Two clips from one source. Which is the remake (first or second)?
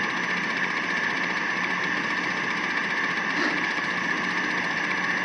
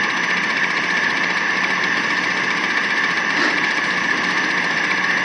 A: second